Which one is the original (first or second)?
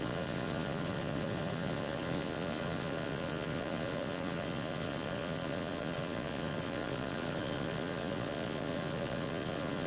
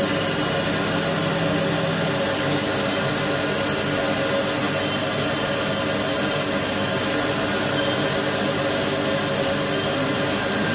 second